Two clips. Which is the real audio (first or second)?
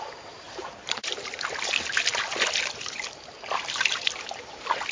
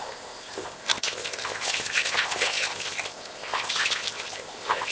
first